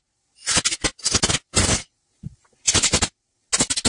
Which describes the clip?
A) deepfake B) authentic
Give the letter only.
B